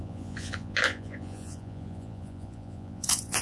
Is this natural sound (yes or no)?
no